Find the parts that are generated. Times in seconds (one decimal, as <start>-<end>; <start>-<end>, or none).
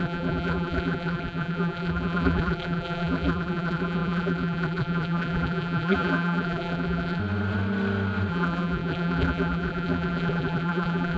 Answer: 0.0-7.2; 8.3-11.2